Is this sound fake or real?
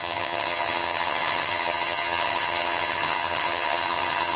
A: fake